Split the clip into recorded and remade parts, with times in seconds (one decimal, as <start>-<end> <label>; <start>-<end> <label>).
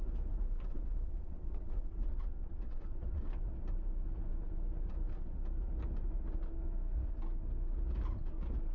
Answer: 0.0-0.7 recorded; 0.7-3.3 remade; 3.3-8.7 recorded